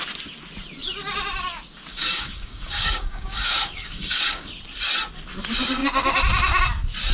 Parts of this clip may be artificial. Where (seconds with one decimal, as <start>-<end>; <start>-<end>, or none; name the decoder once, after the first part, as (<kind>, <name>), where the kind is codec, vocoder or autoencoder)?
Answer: 1.9-4.5 (codec, DAC)